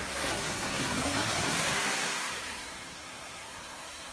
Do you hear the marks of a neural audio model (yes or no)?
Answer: yes